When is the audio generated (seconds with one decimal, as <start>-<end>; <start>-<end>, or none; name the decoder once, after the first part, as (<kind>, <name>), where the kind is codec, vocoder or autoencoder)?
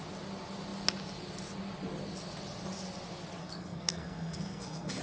3.4-5.0 (codec, SNAC)